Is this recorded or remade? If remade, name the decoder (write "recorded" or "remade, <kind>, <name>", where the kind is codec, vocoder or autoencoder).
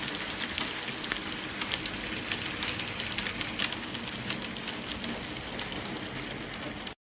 recorded